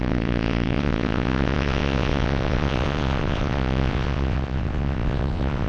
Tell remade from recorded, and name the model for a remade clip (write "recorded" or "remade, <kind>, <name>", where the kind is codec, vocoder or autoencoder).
remade, vocoder, WaveNeXt